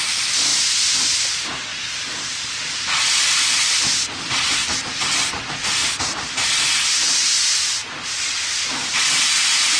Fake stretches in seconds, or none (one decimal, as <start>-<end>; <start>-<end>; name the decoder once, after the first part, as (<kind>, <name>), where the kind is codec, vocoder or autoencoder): 0.5-1.2 (vocoder, BigVGAN v2); 1.7-4.1